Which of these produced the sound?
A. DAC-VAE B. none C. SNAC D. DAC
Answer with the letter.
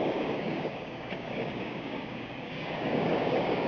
D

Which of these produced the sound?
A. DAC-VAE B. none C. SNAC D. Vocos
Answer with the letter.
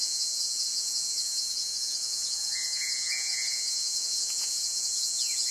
D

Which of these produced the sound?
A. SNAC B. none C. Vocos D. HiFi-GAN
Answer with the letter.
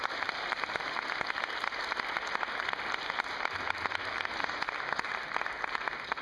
B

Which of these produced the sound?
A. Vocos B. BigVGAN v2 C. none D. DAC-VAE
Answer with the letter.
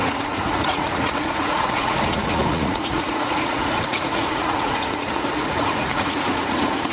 A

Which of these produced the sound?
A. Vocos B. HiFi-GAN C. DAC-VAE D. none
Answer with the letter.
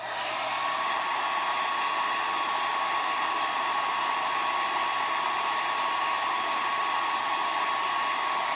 D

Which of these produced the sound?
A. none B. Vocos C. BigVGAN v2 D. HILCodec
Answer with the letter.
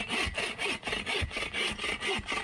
A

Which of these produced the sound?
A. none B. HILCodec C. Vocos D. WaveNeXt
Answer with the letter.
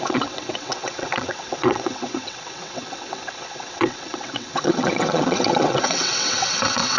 D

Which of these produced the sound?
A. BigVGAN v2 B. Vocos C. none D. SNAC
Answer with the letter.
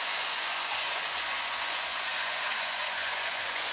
B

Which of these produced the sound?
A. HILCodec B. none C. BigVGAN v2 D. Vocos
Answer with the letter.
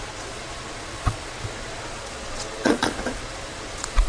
D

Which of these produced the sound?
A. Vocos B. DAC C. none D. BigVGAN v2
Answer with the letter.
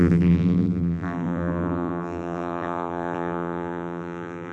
D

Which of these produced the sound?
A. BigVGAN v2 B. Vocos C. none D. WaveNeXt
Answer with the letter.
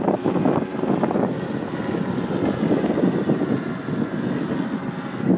C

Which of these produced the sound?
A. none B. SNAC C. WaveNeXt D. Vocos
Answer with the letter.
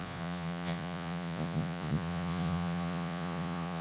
D